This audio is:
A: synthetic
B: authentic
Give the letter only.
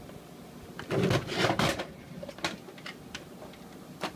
B